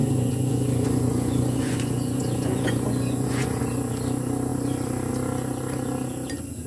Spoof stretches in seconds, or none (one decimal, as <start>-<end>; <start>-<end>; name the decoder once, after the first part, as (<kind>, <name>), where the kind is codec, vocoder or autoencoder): 0.0-3.6 (vocoder, Vocos)